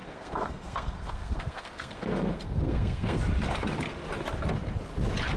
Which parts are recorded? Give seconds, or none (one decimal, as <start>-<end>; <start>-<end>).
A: 3.2-5.4